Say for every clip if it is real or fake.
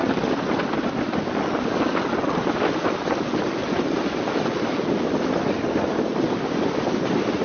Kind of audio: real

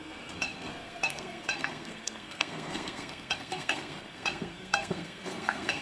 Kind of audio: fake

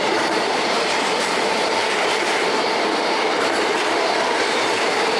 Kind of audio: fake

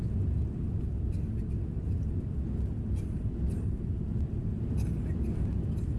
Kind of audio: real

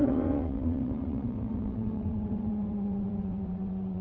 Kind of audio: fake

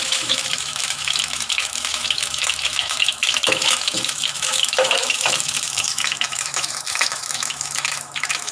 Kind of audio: fake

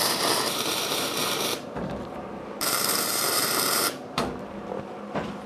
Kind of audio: fake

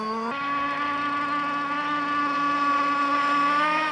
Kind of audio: real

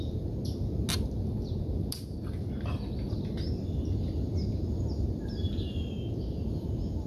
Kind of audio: real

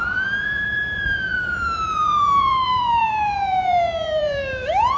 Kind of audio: fake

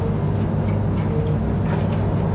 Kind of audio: real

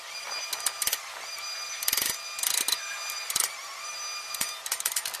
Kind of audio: real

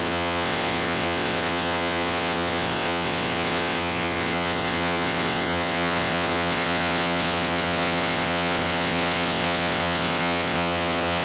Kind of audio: fake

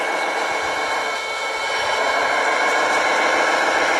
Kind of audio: real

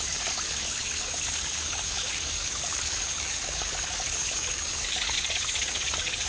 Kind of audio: fake